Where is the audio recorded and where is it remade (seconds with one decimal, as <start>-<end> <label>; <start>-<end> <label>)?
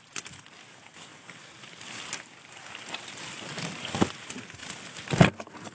0.0-5.7 recorded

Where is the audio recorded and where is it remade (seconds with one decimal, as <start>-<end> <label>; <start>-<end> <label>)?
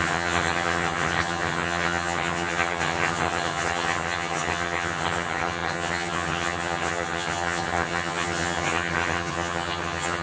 0.0-10.2 remade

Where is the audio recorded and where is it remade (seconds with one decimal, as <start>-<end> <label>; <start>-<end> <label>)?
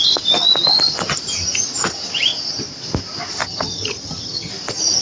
0.0-3.4 recorded; 3.4-4.5 remade; 4.5-5.0 recorded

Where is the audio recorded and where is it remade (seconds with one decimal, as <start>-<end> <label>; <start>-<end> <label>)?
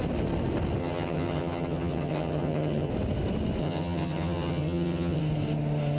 0.0-0.8 recorded; 0.8-2.9 remade; 2.9-3.6 recorded; 3.6-5.2 remade; 5.2-6.0 recorded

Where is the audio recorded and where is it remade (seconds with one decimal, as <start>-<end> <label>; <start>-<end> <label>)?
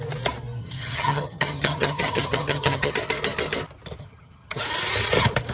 0.0-0.6 recorded; 0.6-2.9 remade; 2.9-4.0 recorded; 4.0-4.6 remade; 4.6-5.5 recorded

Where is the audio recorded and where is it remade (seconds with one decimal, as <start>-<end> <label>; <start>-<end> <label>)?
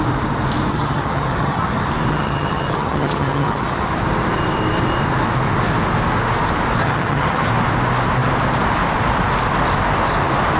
0.0-0.7 recorded; 0.7-1.7 remade; 1.7-2.1 recorded; 2.1-3.9 remade; 3.9-6.8 recorded; 6.8-7.5 remade; 7.5-10.6 recorded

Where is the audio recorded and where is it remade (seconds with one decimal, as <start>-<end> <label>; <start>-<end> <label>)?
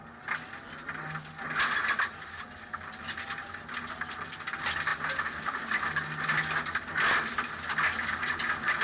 0.0-8.8 recorded